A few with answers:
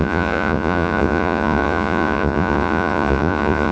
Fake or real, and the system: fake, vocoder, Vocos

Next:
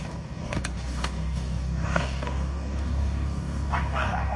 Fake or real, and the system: fake, codec, DAC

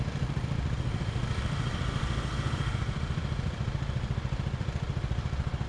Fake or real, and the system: fake, vocoder, BigVGAN v2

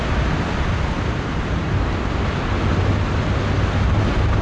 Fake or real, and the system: real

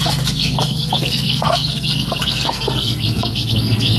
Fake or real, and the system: fake, codec, SNAC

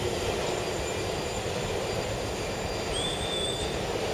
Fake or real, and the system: fake, vocoder, BigVGAN v2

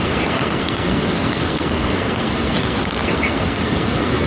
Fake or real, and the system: fake, codec, SNAC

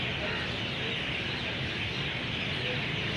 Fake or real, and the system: real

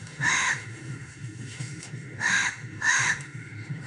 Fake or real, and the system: fake, autoencoder, DAC-VAE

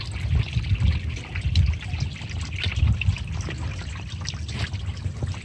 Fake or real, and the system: real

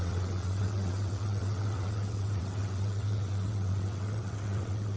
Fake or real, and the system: fake, vocoder, WaveNeXt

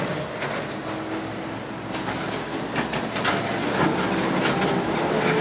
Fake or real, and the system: real